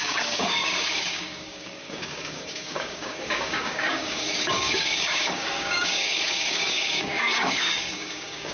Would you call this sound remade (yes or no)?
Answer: yes